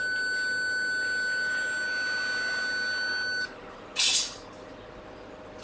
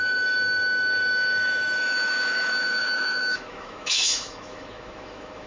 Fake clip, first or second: second